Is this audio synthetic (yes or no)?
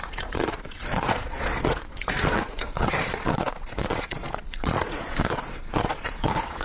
yes